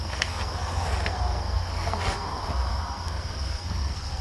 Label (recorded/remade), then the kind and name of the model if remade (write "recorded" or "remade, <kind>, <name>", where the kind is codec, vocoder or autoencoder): remade, codec, SNAC